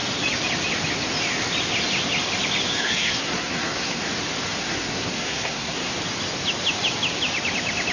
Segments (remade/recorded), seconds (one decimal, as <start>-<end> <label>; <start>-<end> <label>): 0.0-2.8 recorded; 2.8-4.1 remade; 4.1-4.6 recorded; 4.6-5.9 remade; 5.9-7.9 recorded